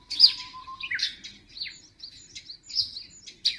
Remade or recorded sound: recorded